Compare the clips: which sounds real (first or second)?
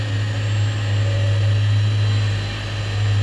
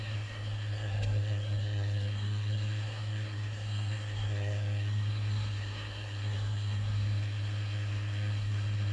first